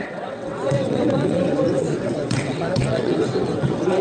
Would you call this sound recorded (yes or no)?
no